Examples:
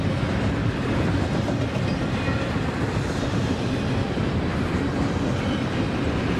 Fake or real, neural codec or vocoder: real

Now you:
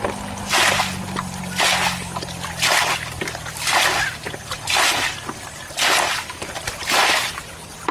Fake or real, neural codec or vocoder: real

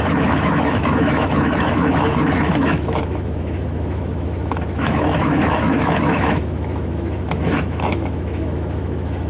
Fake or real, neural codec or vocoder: fake, autoencoder, DAC-VAE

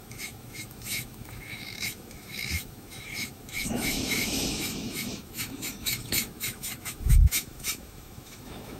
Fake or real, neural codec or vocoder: fake, autoencoder, DAC-VAE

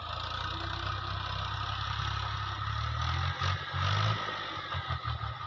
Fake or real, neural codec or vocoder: real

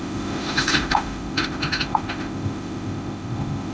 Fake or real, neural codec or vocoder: fake, autoencoder, DAC-VAE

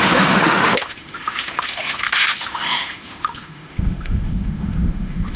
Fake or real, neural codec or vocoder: fake, autoencoder, DAC-VAE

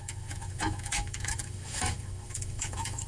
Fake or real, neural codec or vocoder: fake, autoencoder, DAC-VAE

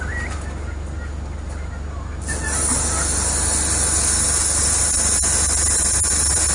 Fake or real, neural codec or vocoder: real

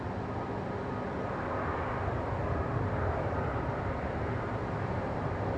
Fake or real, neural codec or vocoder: real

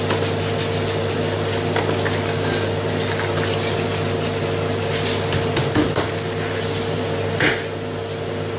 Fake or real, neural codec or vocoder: real